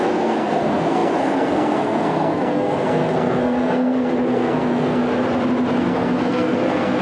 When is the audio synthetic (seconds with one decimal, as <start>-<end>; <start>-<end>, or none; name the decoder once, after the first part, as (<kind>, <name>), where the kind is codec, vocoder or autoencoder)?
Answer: 0.0-5.0 (codec, SNAC); 5.8-7.0